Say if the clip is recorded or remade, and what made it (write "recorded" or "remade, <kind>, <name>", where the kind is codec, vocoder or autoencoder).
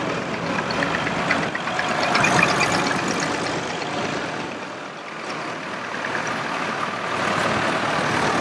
recorded